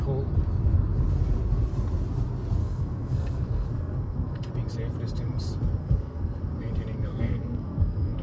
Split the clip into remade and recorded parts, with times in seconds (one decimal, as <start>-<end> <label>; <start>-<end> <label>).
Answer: 0.0-2.6 recorded; 2.6-4.5 remade; 4.5-5.8 recorded; 5.8-6.4 remade; 6.4-7.1 recorded; 7.1-8.2 remade